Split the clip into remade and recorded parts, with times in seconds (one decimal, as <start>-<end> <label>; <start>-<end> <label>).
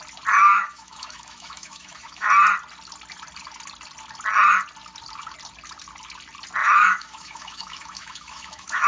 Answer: 0.0-0.4 recorded; 0.4-2.3 remade; 2.3-6.6 recorded; 6.6-8.9 remade